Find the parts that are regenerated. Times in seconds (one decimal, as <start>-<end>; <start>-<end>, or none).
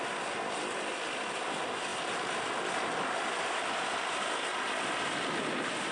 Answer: none